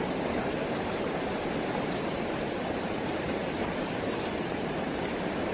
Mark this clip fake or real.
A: fake